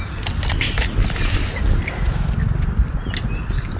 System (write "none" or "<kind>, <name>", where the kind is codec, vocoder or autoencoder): none